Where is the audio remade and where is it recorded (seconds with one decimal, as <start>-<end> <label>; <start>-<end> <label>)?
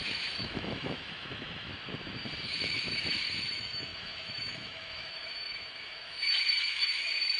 0.0-1.7 remade; 1.7-2.5 recorded; 2.5-7.4 remade